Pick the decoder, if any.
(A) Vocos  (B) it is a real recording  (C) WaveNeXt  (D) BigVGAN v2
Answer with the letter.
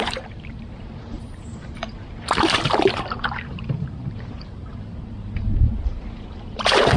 D